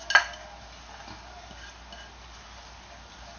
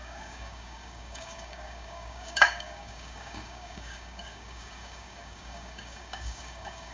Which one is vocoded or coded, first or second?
second